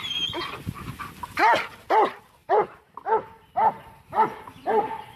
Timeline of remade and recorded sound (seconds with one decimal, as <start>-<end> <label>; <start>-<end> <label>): 0.0-5.2 recorded